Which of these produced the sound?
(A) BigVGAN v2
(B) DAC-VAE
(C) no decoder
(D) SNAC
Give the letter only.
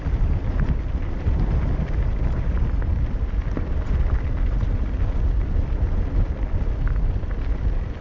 C